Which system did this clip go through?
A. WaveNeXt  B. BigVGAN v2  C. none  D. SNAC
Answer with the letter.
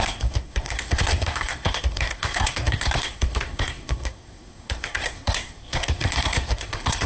D